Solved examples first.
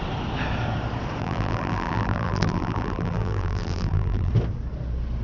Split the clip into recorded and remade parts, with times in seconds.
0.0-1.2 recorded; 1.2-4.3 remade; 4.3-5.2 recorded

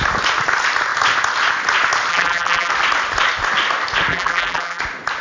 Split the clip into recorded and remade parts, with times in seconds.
0.0-2.1 recorded; 2.1-2.7 remade; 2.7-4.1 recorded; 4.1-4.8 remade; 4.8-5.2 recorded

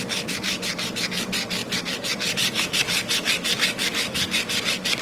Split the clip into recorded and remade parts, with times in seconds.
0.0-1.6 recorded; 1.6-4.6 remade; 4.6-5.0 recorded